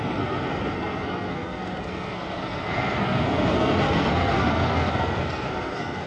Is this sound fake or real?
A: fake